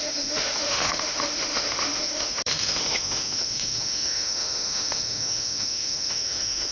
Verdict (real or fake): fake